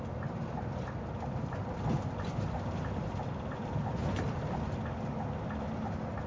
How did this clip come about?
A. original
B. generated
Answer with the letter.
A